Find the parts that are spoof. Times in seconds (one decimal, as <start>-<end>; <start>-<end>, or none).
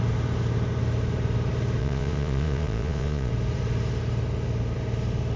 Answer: 1.8-3.3